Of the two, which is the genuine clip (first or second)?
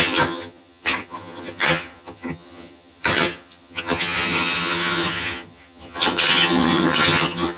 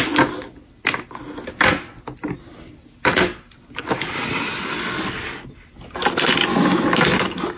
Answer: second